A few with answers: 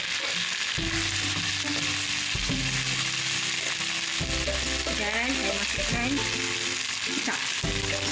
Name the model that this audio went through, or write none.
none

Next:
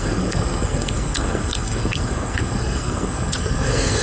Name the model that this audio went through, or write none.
codec, SNAC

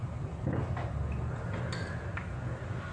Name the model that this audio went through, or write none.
none